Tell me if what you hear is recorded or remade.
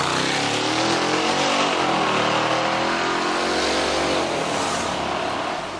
recorded